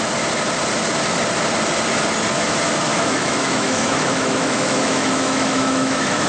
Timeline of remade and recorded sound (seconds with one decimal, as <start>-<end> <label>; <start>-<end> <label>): 0.0-2.9 recorded; 2.9-6.3 remade